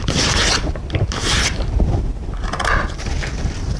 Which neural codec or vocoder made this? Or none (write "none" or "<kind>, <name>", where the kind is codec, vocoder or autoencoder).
none